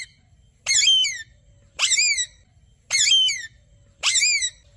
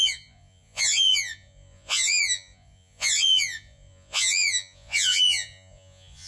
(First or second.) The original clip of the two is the first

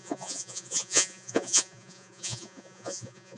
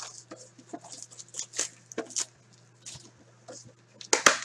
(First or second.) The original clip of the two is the second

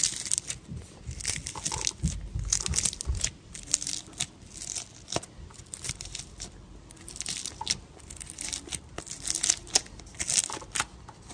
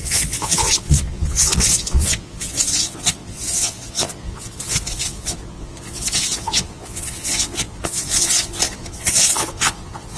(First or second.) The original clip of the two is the first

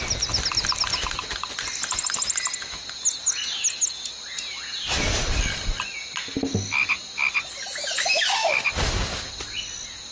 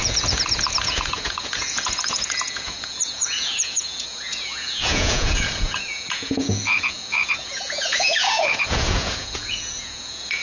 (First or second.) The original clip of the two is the first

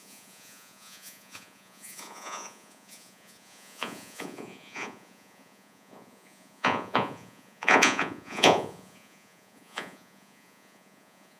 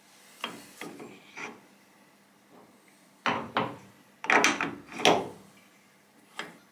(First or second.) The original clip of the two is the second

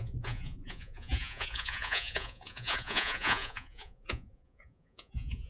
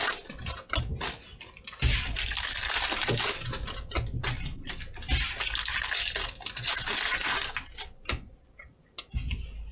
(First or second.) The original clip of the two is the second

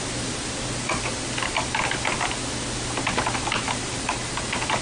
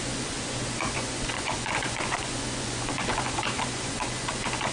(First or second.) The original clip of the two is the first